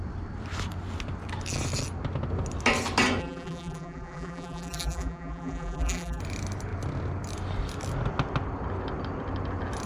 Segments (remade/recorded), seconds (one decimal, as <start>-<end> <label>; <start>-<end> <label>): 0.0-3.2 recorded; 3.2-6.2 remade; 6.2-9.9 recorded